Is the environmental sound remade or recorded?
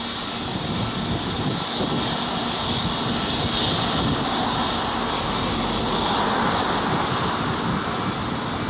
recorded